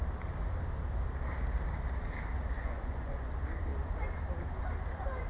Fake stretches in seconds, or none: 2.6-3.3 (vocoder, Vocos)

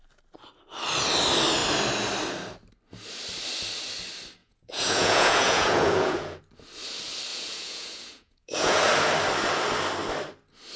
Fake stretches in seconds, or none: 4.4-6.4 (vocoder, Vocos); 7.3-8.8

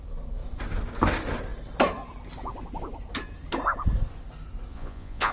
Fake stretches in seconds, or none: 4.7-5.3 (vocoder, Vocos)

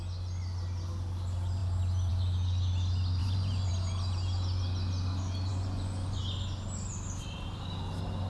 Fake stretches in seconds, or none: 3.2-3.7 (vocoder, Vocos); 5.5-6.2

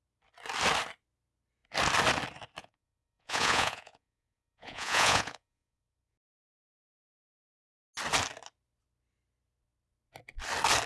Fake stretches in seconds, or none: 2.6-7.4 (vocoder, Vocos)

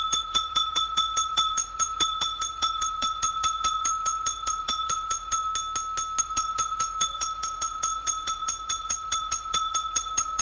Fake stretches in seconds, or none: 0.0-5.5 (vocoder, Vocos); 6.2-10.4

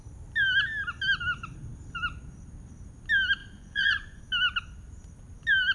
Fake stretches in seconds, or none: 3.4-4.2 (vocoder, Vocos)